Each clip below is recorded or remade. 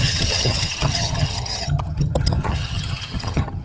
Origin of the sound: remade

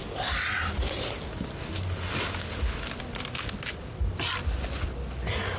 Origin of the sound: recorded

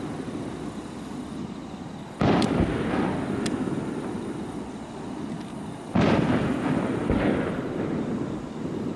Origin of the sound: recorded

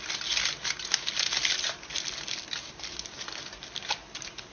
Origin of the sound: recorded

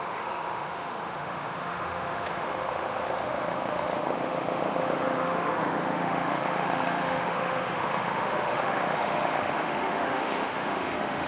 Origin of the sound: remade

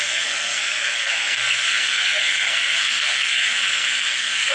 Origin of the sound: remade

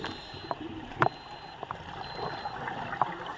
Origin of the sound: recorded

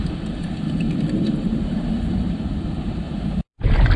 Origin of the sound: remade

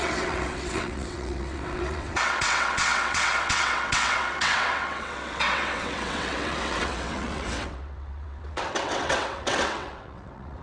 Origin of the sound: remade